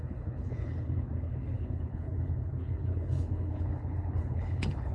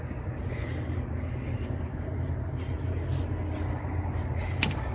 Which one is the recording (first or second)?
second